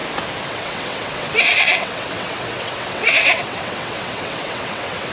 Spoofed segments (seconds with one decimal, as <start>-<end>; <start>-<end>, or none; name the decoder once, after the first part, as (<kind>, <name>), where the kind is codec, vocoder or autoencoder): 0.5-5.1 (vocoder, WaveNeXt)